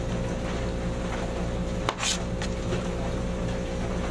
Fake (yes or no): no